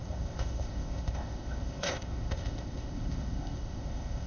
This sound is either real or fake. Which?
fake